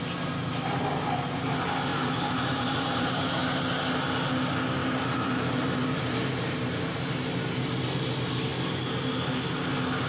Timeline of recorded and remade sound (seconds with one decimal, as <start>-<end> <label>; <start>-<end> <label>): 0.0-1.9 recorded; 1.9-3.3 remade; 3.3-4.8 recorded; 4.8-7.0 remade; 7.0-10.1 recorded